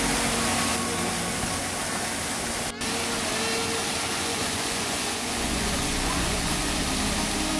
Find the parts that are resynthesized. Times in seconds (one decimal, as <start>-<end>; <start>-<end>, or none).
4.1-6.8